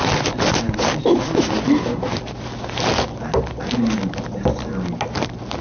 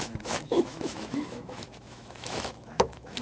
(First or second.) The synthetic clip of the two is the second